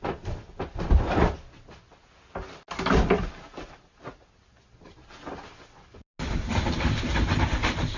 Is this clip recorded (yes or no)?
yes